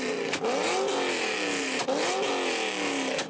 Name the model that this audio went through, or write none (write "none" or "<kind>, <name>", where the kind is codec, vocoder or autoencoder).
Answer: none